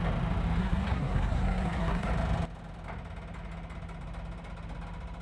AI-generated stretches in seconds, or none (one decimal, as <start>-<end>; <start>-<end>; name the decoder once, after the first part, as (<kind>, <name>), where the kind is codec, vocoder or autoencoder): 0.6-2.1 (codec, SNAC)